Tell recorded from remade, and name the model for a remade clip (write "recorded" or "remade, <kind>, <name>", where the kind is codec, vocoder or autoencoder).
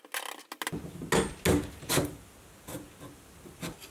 recorded